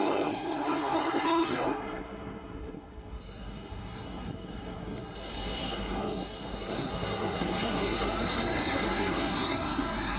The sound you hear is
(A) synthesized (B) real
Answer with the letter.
A